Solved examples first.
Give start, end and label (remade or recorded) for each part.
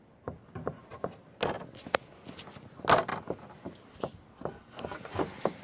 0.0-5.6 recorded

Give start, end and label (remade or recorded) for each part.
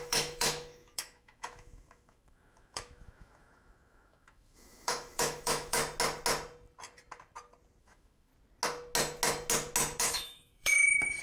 0.0-5.8 remade; 5.8-7.8 recorded; 7.8-8.3 remade; 8.3-10.0 recorded; 10.0-11.2 remade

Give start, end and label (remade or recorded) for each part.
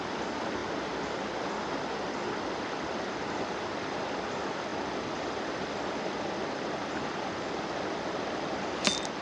0.0-9.2 recorded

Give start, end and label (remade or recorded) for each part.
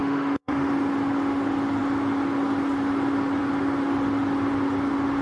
0.0-0.7 remade; 0.7-5.2 recorded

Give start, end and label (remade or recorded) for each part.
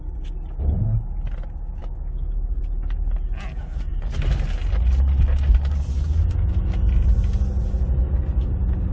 0.0-1.8 recorded; 1.8-2.6 remade; 2.6-8.9 recorded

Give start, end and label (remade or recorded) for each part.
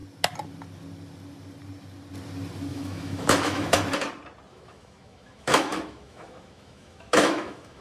0.0-2.7 recorded; 2.7-3.8 remade; 3.8-4.5 recorded; 4.5-7.8 remade